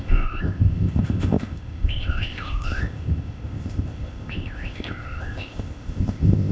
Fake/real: fake